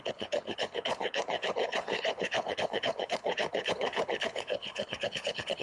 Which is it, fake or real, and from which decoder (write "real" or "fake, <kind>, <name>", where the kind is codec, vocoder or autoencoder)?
fake, codec, HILCodec